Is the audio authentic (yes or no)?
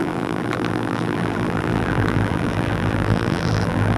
no